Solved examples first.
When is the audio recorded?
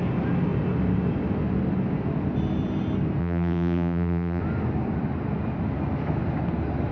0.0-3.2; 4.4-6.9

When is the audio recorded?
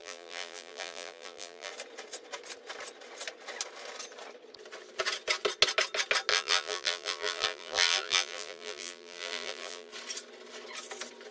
1.7-6.3; 9.9-11.3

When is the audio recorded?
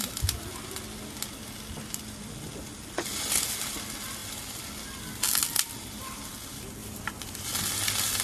0.0-6.8; 7.5-8.2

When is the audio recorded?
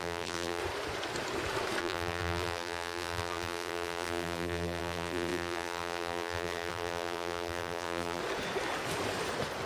0.6-1.8; 8.2-9.7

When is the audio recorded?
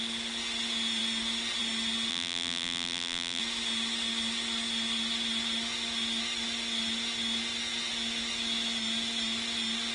0.0-2.1; 3.4-9.9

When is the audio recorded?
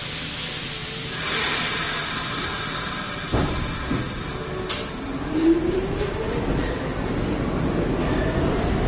0.0-0.8; 3.6-4.8; 7.2-8.9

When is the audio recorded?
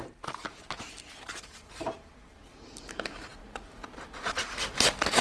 none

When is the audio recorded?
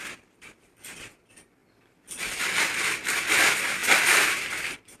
1.6-2.4